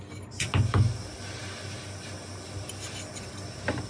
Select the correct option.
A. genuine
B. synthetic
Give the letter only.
A